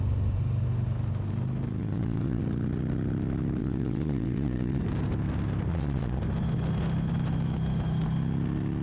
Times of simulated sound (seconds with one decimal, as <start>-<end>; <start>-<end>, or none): 1.8-2.4; 3.6-4.8; 5.7-6.2